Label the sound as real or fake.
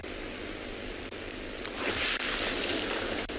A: real